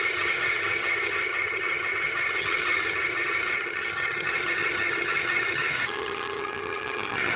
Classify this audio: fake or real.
fake